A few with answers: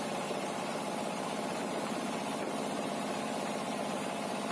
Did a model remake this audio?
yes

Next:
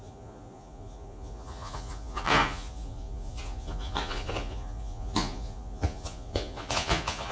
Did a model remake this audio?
yes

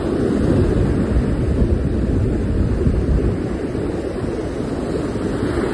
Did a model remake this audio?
no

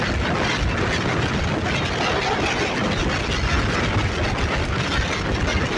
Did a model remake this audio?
no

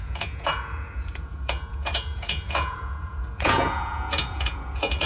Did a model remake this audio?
yes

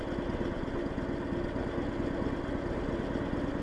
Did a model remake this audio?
no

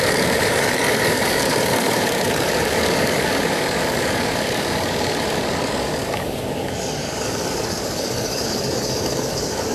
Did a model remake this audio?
yes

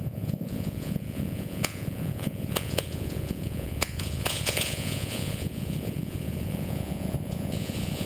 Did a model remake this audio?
yes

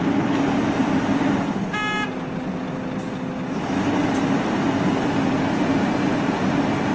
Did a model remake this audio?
no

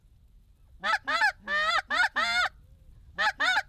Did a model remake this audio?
no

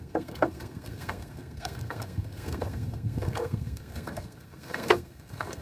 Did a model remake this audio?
yes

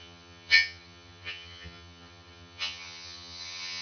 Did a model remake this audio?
yes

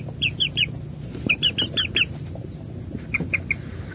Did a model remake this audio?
no